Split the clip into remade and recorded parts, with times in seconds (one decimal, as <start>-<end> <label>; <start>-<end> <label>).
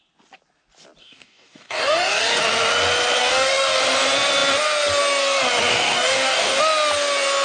0.0-1.0 recorded; 1.0-2.4 remade; 2.4-3.2 recorded; 3.2-3.8 remade; 3.8-5.7 recorded; 5.7-6.6 remade; 6.6-7.4 recorded